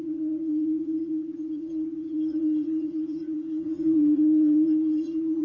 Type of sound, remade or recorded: remade